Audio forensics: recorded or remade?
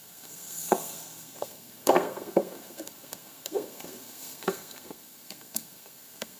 remade